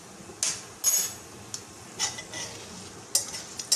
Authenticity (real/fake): real